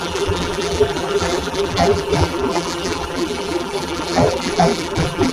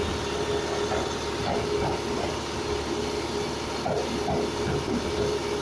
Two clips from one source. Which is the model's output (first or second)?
first